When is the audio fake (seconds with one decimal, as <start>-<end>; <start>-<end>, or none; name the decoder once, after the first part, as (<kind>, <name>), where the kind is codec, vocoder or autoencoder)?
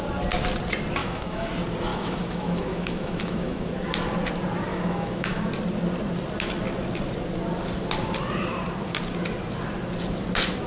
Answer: 1.0-1.5 (autoencoder, DAC-VAE); 1.9-3.7; 4.7-5.5